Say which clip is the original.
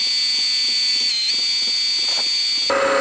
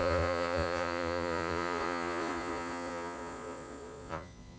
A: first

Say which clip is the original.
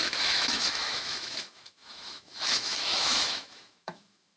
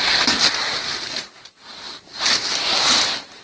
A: second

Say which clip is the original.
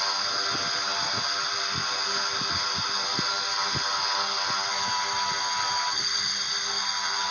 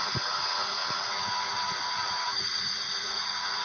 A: first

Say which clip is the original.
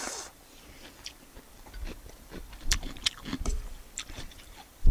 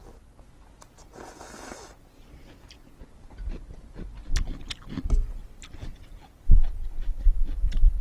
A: second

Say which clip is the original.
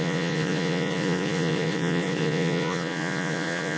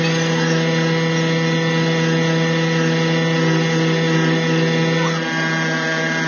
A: second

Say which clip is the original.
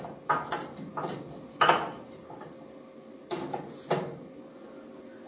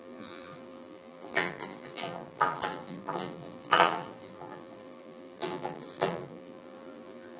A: first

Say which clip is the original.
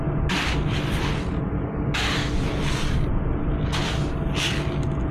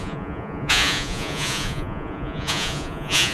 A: first